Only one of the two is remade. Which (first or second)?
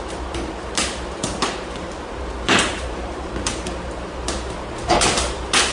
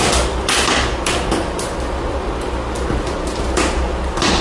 first